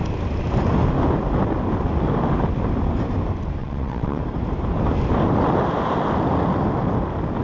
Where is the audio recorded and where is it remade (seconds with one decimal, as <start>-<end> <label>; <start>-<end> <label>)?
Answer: 0.0-3.6 recorded; 3.6-4.2 remade; 4.2-7.4 recorded